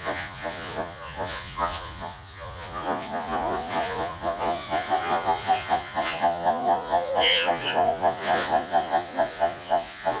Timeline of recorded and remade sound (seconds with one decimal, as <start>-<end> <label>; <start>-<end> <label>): 0.0-10.2 remade